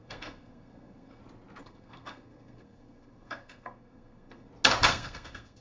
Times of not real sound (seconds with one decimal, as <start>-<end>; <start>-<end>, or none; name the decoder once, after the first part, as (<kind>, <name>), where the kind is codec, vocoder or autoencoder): 0.0-1.2 (codec, SNAC); 1.6-4.5; 4.9-5.6